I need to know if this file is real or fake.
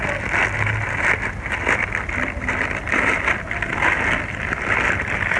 real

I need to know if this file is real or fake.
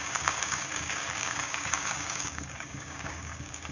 fake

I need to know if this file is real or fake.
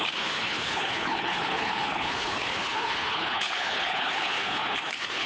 fake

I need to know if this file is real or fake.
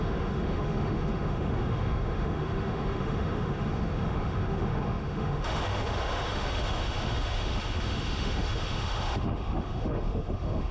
fake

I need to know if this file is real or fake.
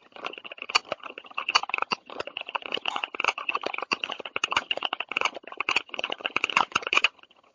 fake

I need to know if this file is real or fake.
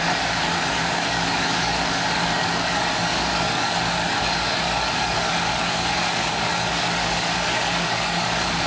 fake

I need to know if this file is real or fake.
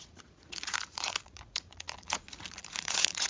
fake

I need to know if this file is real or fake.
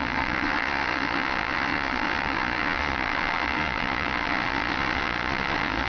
fake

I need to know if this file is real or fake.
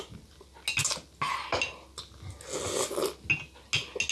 real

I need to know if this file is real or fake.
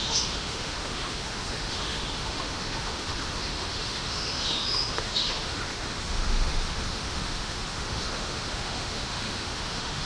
fake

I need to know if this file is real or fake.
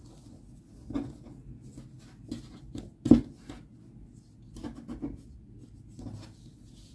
real